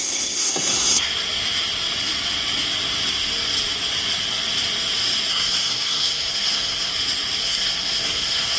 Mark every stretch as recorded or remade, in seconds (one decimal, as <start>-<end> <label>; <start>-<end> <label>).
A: 0.0-1.1 remade; 1.1-5.3 recorded; 5.3-6.9 remade; 6.9-7.4 recorded; 7.4-8.6 remade